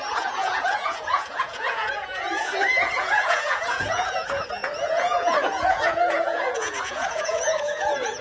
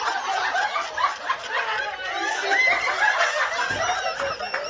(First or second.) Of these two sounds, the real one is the second